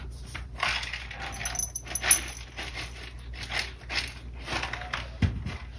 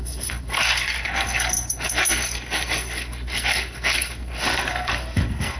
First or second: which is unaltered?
first